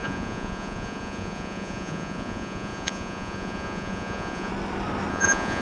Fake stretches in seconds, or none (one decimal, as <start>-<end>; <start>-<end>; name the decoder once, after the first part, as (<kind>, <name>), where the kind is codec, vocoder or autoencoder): 0.0-4.5 (vocoder, Vocos); 5.1-5.6

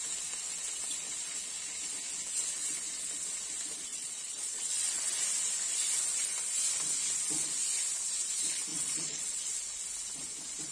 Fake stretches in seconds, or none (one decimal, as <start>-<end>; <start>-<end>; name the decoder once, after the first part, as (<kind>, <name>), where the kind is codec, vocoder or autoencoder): 3.9-5.0 (vocoder, Vocos); 8.7-9.5

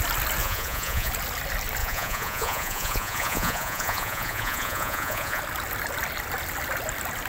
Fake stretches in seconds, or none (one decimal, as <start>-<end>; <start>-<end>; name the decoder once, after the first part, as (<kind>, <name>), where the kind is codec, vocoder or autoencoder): 0.4-1.1 (vocoder, Vocos); 1.8-5.4